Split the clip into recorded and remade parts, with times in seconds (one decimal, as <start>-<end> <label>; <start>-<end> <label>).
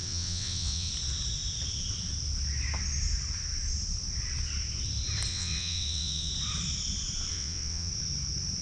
0.0-0.9 remade; 0.9-5.3 recorded; 5.3-6.3 remade; 6.3-7.3 recorded; 7.3-7.9 remade; 7.9-8.6 recorded